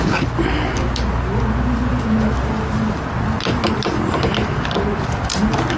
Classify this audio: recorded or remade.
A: recorded